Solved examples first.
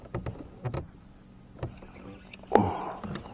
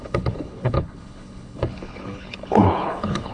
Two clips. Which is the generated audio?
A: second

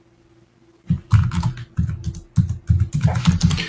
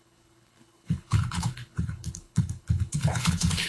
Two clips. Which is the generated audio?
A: second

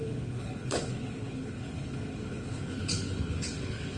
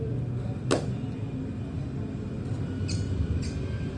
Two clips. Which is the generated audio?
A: first